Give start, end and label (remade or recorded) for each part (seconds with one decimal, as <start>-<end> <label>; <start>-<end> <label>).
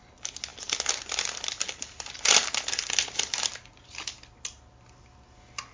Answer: 0.0-5.7 recorded